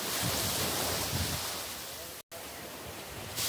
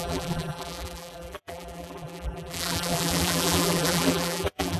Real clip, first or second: first